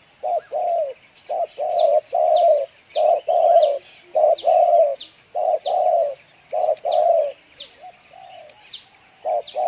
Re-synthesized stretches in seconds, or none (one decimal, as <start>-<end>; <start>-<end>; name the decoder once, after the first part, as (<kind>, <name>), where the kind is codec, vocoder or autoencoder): none